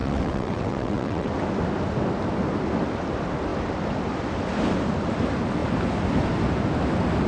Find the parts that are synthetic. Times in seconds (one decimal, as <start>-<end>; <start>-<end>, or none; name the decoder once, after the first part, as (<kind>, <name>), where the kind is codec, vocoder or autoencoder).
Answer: 0.0-1.3 (vocoder, WaveNeXt)